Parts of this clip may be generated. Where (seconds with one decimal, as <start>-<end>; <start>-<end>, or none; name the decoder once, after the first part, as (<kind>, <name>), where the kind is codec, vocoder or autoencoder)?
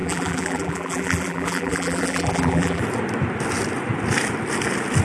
0.0-2.8 (vocoder, BigVGAN v2)